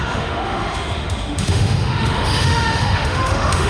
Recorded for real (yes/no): no